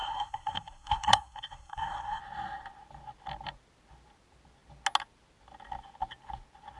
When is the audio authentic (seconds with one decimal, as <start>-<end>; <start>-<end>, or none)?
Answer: 2.2-6.8